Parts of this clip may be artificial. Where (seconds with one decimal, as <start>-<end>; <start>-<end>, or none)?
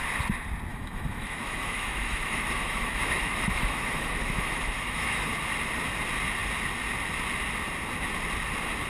0.7-5.3